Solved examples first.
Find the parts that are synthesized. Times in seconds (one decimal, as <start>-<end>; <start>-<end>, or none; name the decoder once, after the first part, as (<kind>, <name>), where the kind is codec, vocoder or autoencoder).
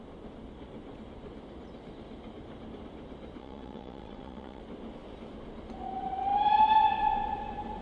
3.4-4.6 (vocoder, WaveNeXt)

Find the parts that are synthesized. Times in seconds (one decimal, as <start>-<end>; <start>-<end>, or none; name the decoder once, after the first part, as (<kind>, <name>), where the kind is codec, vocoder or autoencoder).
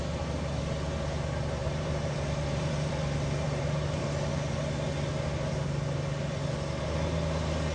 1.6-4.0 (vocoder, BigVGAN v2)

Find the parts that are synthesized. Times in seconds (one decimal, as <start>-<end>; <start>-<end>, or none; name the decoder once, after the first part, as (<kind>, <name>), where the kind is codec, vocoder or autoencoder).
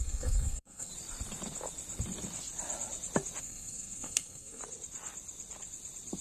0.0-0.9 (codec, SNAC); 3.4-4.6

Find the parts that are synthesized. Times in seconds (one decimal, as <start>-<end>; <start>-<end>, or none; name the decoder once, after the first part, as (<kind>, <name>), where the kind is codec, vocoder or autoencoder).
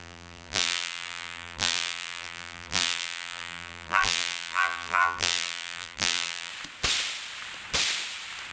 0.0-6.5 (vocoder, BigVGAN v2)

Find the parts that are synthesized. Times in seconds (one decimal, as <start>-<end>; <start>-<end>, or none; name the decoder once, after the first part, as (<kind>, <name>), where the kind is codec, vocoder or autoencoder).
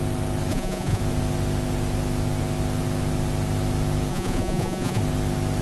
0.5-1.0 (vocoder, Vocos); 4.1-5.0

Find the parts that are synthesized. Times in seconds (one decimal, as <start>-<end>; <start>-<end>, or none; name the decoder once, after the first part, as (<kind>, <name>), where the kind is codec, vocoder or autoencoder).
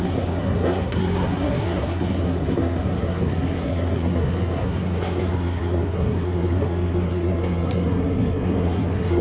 0.0-9.2 (codec, SNAC)